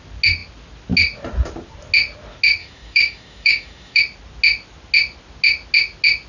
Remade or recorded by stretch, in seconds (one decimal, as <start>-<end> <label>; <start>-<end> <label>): 0.0-2.6 recorded; 2.6-4.0 remade; 4.0-6.3 recorded